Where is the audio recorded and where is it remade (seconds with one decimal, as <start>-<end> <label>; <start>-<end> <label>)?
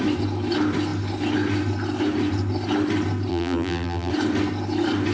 0.0-3.3 recorded; 3.3-4.1 remade; 4.1-5.1 recorded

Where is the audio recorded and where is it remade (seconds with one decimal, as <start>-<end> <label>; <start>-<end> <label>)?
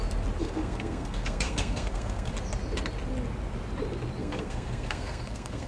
0.0-0.4 recorded; 0.4-2.3 remade; 2.3-4.2 recorded; 4.2-5.7 remade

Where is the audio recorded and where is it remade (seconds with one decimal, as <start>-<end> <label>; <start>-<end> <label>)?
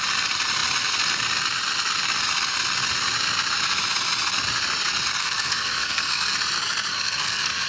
0.0-5.2 recorded; 5.2-6.3 remade; 6.3-6.9 recorded; 6.9-7.7 remade